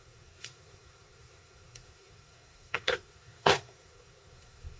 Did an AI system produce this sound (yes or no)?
yes